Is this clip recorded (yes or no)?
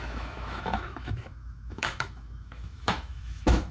no